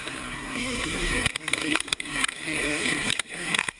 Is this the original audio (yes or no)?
no